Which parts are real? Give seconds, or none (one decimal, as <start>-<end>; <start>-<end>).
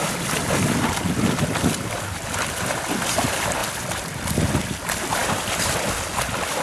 2.5-3.6; 4.4-5.2; 6.1-6.6